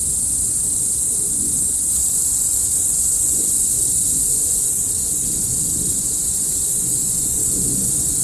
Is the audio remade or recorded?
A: remade